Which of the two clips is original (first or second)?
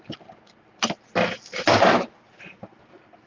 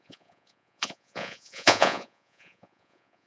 first